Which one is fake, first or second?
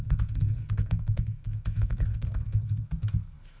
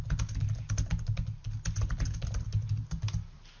first